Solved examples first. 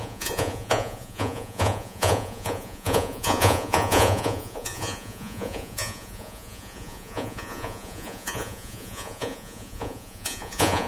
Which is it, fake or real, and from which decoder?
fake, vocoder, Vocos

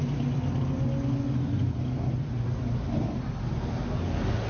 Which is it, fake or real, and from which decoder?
real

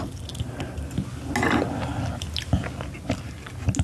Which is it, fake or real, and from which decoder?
real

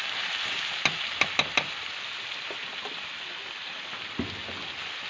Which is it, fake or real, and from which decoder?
real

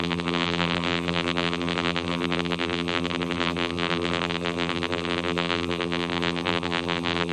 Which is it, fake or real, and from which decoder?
fake, vocoder, BigVGAN v2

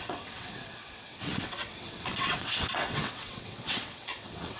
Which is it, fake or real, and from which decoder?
fake, vocoder, WaveNeXt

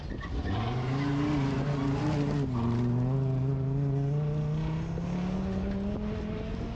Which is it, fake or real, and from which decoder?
real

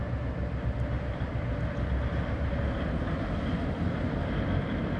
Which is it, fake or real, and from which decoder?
real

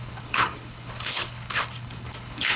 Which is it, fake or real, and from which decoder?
fake, codec, HILCodec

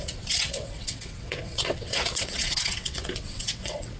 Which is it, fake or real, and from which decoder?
fake, vocoder, WaveNeXt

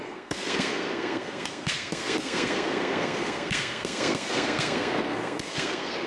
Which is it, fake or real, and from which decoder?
fake, codec, SNAC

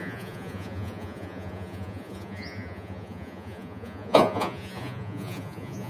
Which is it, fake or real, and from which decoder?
fake, vocoder, Vocos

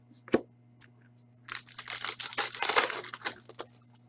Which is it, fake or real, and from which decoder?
real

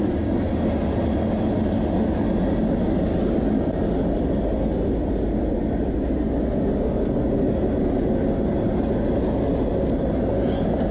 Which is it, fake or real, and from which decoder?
real